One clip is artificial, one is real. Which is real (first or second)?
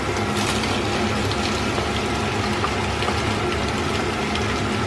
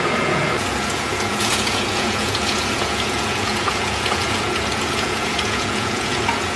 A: first